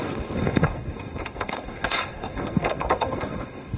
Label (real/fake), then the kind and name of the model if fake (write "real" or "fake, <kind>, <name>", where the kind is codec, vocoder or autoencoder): fake, codec, SNAC